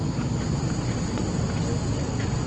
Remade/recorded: recorded